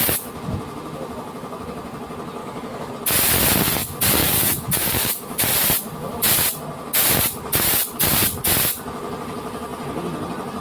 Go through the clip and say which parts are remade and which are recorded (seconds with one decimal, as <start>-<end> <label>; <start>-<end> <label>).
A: 0.0-2.4 recorded; 2.4-2.9 remade; 2.9-4.2 recorded; 4.2-5.5 remade; 5.5-10.6 recorded